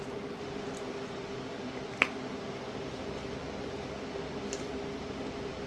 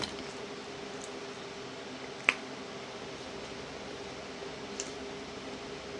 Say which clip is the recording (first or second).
second